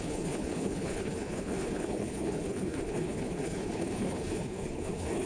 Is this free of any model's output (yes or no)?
no